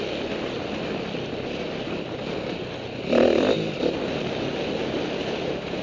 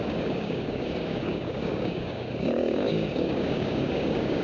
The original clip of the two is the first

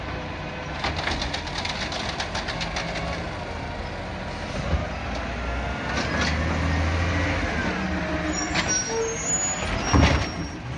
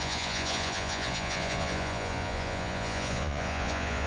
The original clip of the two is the first